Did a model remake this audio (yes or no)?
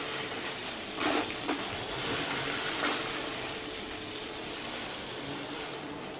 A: yes